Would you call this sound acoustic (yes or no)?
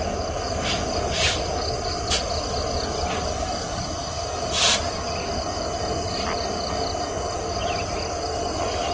yes